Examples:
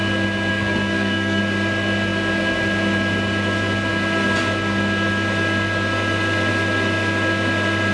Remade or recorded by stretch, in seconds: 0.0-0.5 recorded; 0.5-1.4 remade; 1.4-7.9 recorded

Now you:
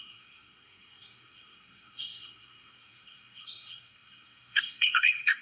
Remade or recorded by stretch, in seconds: 0.0-5.4 remade